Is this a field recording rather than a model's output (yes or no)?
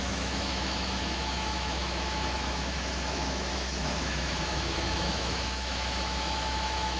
no